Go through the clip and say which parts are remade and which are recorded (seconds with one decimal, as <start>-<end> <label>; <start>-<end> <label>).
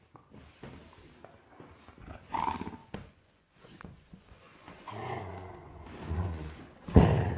0.0-2.8 recorded; 2.8-7.0 remade; 7.0-7.4 recorded